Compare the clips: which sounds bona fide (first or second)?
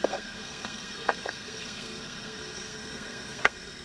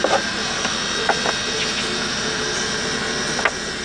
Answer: second